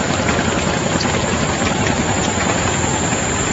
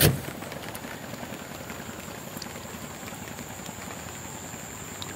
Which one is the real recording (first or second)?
second